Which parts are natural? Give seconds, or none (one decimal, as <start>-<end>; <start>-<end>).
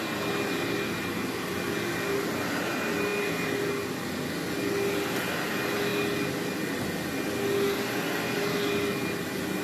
0.0-9.6